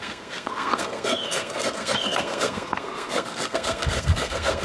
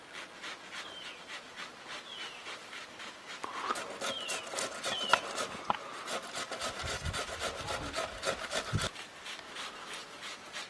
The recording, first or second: second